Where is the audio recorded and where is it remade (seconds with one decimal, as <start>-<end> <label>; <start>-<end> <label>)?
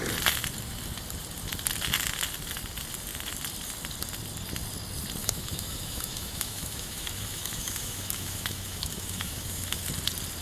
0.0-5.2 recorded; 5.2-9.8 remade; 9.8-10.4 recorded